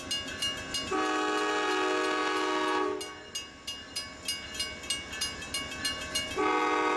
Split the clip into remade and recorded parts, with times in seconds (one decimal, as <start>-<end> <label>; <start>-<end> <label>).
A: 0.0-7.0 recorded